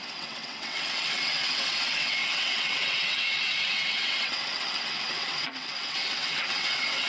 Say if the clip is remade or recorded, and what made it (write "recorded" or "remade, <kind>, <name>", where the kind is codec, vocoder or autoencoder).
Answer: remade, vocoder, WaveNeXt